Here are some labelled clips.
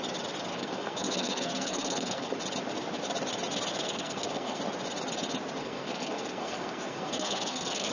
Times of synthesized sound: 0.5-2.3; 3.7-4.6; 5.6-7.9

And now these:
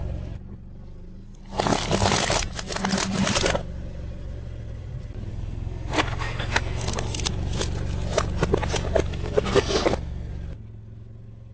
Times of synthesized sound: 5.3-7.3; 9.1-10.3